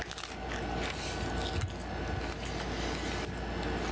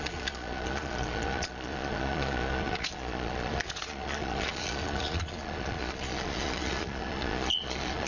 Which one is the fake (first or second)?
second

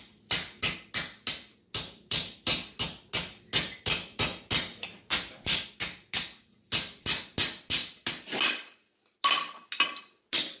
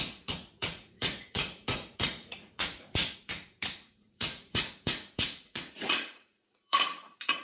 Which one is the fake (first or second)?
second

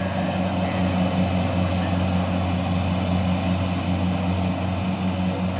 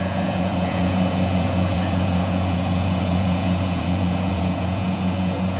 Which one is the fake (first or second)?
second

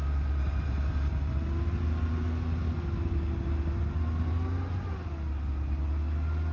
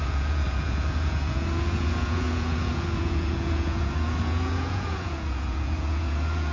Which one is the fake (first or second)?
second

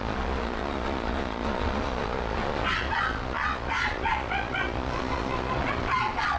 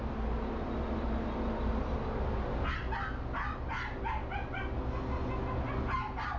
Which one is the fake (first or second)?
first